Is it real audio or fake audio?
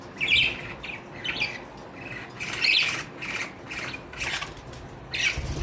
real